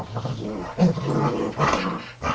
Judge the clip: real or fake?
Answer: real